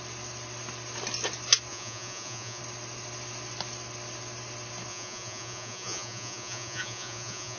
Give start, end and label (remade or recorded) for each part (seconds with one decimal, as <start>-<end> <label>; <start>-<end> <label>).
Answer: 0.0-1.7 recorded; 1.7-2.6 remade; 2.6-4.9 recorded; 4.9-7.6 remade